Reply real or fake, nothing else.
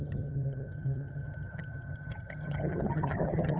fake